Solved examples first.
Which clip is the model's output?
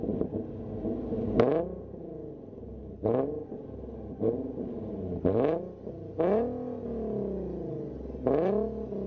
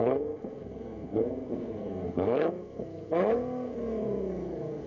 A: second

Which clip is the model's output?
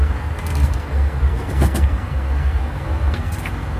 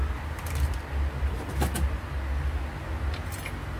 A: first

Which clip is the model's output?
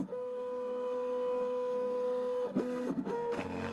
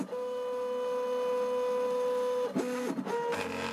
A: first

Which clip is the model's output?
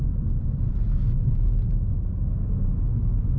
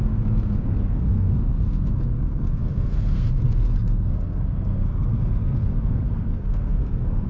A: second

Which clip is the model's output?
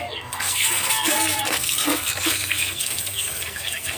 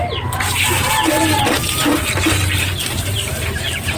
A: first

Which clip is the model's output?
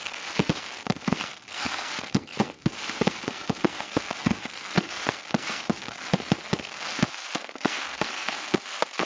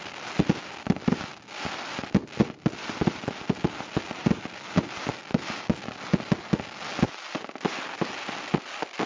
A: first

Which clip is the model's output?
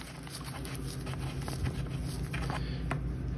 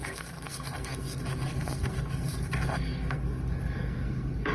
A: second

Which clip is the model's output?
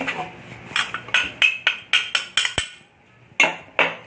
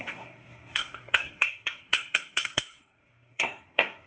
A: second